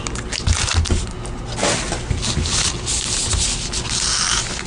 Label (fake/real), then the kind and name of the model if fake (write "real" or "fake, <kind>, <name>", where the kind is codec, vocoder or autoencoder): real